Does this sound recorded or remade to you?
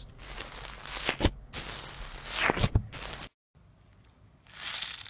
recorded